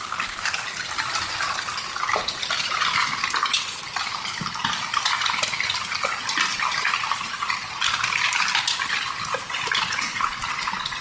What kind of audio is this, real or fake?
real